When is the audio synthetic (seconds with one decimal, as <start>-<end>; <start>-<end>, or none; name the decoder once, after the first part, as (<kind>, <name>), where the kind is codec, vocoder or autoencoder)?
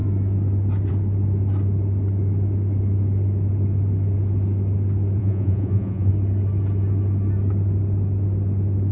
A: 5.2-6.1 (vocoder, Vocos)